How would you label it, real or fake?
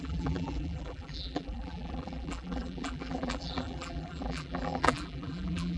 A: fake